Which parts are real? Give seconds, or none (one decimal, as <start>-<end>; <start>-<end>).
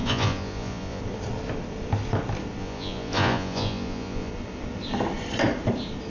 1.0-2.6; 4.3-6.1